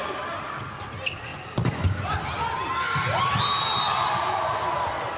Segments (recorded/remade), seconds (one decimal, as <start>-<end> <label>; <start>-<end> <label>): 0.0-1.3 recorded; 1.3-2.1 remade; 2.1-5.2 recorded